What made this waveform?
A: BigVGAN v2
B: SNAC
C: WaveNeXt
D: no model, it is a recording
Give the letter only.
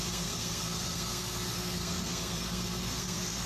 B